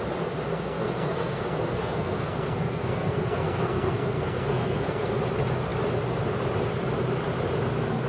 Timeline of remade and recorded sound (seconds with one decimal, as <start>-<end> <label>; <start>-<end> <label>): 0.0-0.5 recorded; 0.5-5.2 remade; 5.2-8.1 recorded